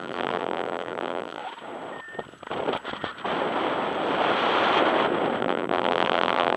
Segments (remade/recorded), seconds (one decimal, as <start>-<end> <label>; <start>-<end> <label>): 0.0-1.4 remade; 1.4-5.4 recorded; 5.4-6.6 remade